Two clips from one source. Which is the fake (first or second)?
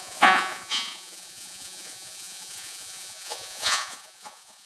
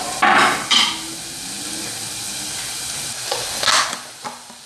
first